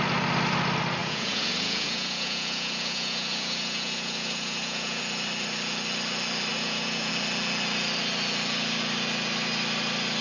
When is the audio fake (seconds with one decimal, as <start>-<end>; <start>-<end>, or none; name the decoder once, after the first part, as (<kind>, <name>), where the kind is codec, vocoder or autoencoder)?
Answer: 1.0-5.0 (vocoder, Vocos); 6.5-7.1

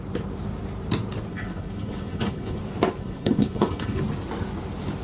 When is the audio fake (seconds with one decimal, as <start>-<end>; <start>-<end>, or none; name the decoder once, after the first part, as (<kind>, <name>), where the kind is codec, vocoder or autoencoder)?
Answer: 1.3-2.6 (codec, HILCodec); 3.0-4.0